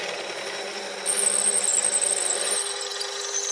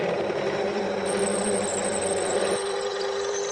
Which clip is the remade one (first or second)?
second